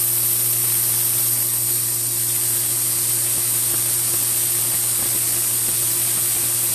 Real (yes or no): yes